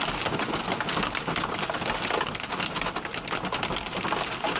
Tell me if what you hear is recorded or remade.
recorded